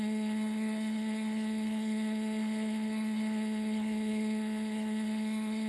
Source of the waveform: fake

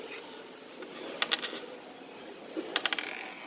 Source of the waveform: real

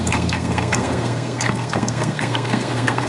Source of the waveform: fake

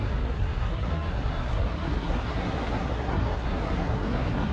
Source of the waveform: fake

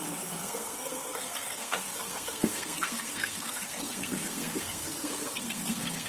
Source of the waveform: fake